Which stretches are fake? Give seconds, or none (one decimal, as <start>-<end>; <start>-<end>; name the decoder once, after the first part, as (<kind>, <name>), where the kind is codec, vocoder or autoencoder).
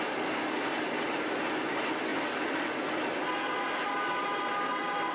2.1-3.9 (vocoder, BigVGAN v2)